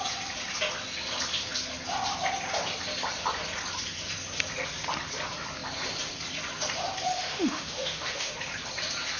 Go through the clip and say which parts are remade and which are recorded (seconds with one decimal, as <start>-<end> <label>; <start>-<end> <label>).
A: 0.0-7.1 recorded; 7.1-8.3 remade; 8.3-9.2 recorded